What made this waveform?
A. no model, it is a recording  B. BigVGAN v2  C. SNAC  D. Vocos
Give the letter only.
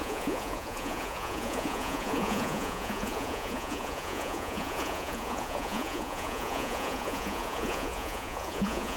D